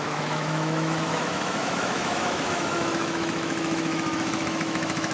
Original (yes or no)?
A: no